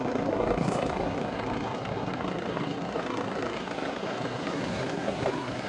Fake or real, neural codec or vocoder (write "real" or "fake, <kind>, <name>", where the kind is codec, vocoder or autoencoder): fake, codec, SNAC